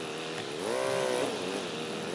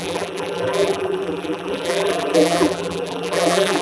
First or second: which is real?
first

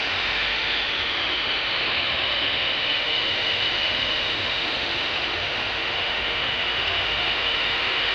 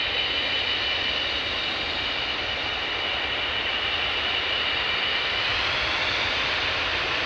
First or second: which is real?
second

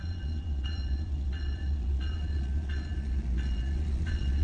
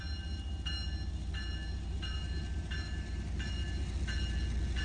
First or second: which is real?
second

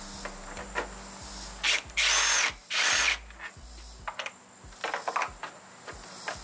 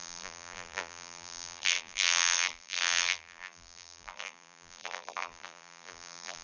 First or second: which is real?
first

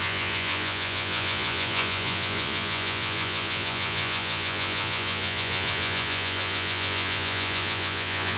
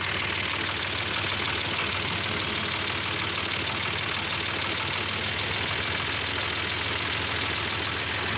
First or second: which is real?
second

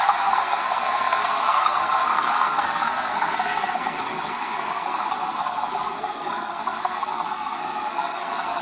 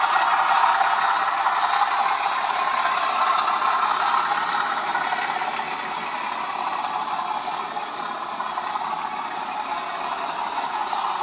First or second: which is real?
second